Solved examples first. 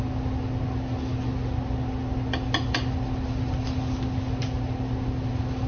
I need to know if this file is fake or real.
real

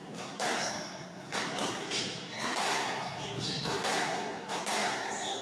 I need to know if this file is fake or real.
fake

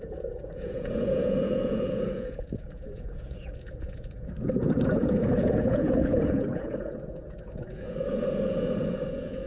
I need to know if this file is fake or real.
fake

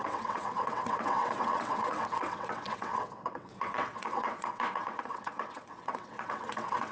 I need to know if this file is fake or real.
fake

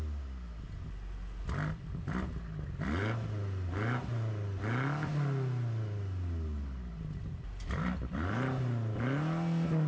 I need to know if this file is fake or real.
real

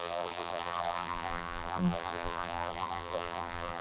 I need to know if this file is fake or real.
fake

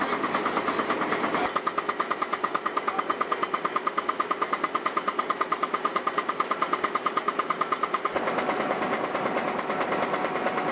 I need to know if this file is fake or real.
real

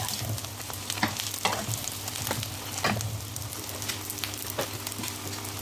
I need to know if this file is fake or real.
real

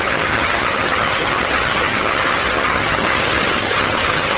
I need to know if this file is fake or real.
fake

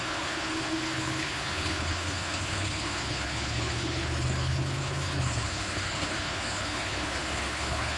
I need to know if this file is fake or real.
fake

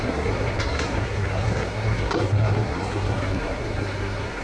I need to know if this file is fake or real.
fake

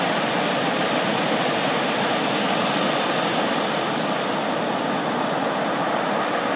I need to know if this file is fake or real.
real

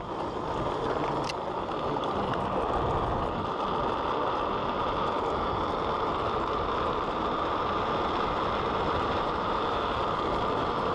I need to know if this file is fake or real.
real